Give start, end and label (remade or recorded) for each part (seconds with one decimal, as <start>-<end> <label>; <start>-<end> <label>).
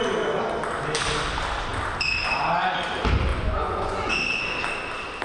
0.0-3.3 recorded; 3.3-4.1 remade; 4.1-5.2 recorded